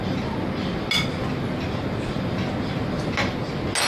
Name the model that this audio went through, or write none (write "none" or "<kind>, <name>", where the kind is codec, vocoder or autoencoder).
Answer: none